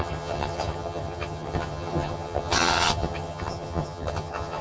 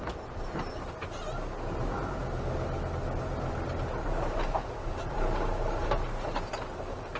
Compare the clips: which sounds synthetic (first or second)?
first